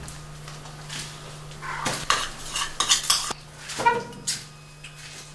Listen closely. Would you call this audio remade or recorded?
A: recorded